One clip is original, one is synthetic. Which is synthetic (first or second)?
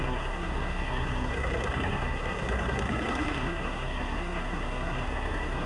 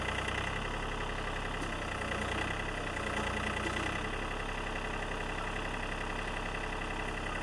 first